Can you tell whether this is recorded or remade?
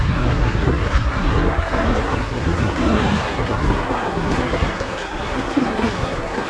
remade